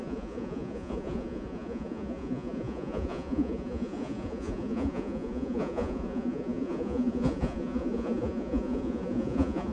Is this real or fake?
fake